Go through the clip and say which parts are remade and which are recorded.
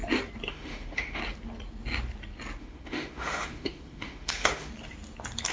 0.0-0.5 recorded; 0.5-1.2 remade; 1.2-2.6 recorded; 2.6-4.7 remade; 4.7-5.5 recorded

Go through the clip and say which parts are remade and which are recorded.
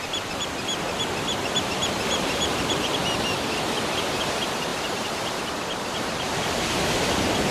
0.0-3.0 remade; 3.0-4.0 recorded; 4.0-7.5 remade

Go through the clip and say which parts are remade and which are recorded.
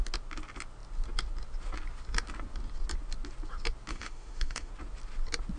0.0-3.9 recorded; 3.9-4.7 remade; 4.7-5.6 recorded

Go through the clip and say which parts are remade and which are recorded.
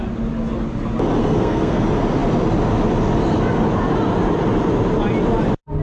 0.0-1.2 recorded; 1.2-1.8 remade; 1.8-5.8 recorded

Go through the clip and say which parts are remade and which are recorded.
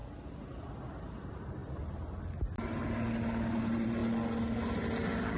0.0-1.0 recorded; 1.0-1.6 remade; 1.6-3.6 recorded; 3.6-4.0 remade; 4.0-5.4 recorded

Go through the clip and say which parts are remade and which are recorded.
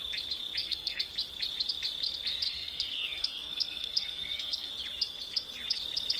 0.0-0.6 recorded; 0.6-1.1 remade; 1.1-2.5 recorded; 2.5-4.7 remade; 4.7-6.2 recorded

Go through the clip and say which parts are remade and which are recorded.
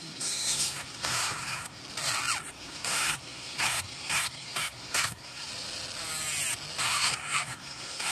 0.0-1.8 remade; 1.8-2.5 recorded; 2.5-5.5 remade; 5.5-6.8 recorded; 6.8-8.1 remade